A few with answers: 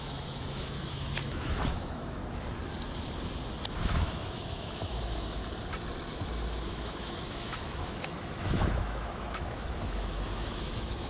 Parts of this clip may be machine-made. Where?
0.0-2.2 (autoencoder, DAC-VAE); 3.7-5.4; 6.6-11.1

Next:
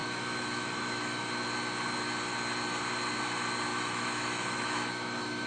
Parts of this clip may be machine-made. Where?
0.0-1.3 (autoencoder, DAC-VAE); 3.7-5.5

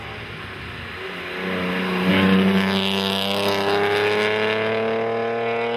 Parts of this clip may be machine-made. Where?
none

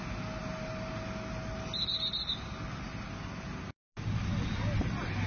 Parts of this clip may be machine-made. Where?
none

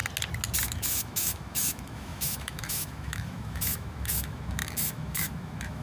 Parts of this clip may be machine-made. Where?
0.6-5.8 (autoencoder, DAC-VAE)

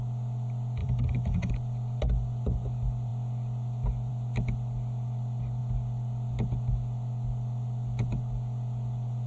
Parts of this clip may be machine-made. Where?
0.8-1.5 (autoencoder, DAC-VAE)

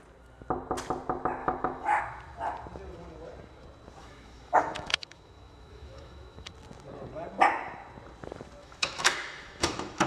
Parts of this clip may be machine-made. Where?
1.4-2.0 (autoencoder, DAC-VAE); 4.0-6.5; 8.6-10.1